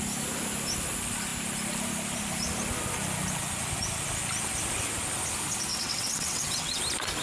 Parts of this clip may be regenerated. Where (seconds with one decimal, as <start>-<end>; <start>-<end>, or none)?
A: 5.7-6.8